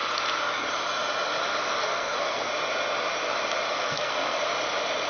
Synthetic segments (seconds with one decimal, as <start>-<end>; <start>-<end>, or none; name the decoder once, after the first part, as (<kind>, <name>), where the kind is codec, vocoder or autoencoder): 1.8-2.5 (codec, SNAC); 3.7-4.4